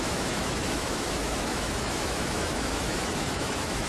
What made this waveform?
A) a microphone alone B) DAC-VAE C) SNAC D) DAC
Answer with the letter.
B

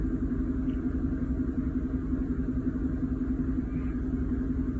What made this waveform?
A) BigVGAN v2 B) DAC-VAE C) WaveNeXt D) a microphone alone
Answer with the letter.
D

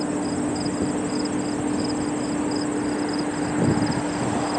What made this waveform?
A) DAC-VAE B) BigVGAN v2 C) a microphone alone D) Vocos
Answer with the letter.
C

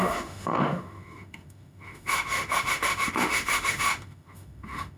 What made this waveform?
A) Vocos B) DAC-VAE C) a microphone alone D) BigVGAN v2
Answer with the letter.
B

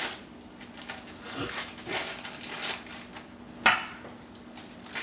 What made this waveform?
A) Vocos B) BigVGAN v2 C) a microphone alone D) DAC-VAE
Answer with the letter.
C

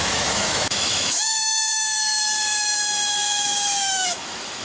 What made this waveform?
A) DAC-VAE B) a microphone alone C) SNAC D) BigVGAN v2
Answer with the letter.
A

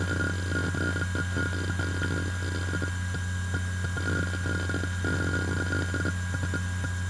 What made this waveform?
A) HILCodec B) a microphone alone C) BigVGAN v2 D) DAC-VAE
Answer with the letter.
B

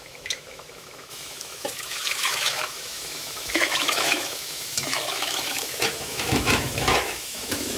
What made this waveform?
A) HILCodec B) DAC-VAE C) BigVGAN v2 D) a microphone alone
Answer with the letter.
B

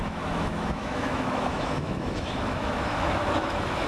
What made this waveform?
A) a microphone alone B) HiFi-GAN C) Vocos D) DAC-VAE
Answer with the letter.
D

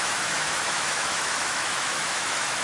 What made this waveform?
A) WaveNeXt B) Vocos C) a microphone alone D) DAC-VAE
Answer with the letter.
D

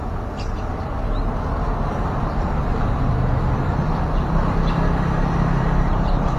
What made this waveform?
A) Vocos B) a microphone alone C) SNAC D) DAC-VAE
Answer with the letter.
B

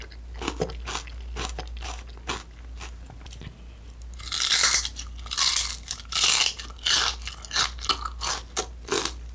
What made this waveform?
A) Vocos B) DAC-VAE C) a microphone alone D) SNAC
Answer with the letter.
C